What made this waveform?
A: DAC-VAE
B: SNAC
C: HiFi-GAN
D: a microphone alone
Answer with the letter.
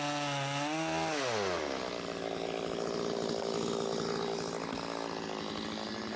D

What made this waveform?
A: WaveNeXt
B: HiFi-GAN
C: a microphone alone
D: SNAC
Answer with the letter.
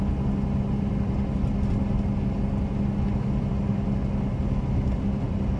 C